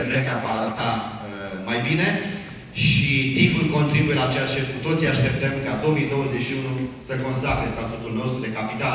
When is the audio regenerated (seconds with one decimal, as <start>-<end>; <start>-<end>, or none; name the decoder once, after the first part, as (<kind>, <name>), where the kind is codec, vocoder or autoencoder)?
0.0-0.8 (codec, HILCodec)